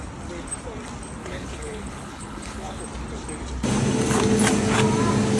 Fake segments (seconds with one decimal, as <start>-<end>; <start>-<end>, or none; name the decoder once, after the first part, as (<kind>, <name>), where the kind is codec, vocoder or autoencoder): 1.2-2.8 (codec, HILCodec)